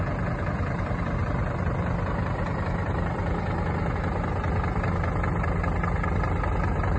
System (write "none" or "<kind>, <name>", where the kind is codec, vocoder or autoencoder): none